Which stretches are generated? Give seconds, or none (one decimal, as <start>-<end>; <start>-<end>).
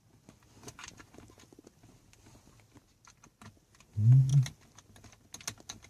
0.8-1.6